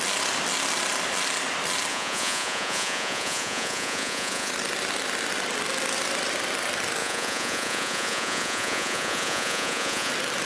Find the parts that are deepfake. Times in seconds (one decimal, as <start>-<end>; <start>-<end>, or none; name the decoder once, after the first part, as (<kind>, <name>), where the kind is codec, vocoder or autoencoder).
1.9-4.5 (vocoder, Vocos); 7.0-10.1